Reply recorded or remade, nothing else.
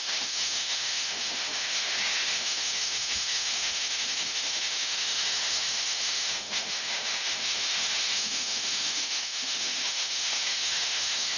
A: remade